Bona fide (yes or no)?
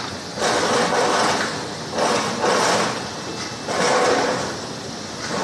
yes